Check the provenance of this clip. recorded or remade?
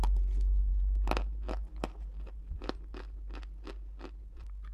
recorded